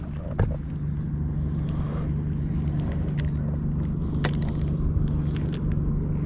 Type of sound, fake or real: real